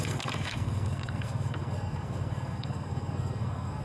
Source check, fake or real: fake